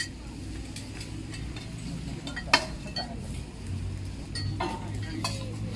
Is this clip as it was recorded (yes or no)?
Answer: yes